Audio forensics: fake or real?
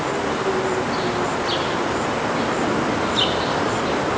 real